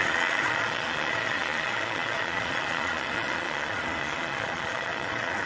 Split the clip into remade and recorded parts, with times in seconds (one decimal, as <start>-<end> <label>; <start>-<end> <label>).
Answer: 0.0-5.5 remade